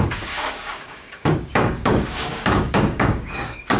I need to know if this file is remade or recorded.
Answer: remade